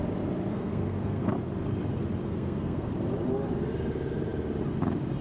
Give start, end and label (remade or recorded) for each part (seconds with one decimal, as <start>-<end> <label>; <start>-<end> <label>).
0.0-0.5 recorded; 0.5-1.3 remade; 1.3-2.2 recorded; 2.2-2.9 remade; 2.9-5.2 recorded